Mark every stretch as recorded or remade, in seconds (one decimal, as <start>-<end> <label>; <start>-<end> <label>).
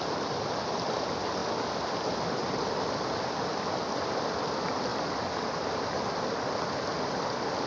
0.0-7.7 recorded